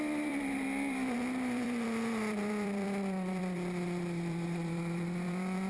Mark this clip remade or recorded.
remade